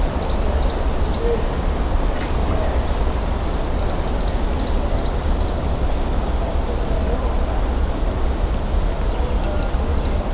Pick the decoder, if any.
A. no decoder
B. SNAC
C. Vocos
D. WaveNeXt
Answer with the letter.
A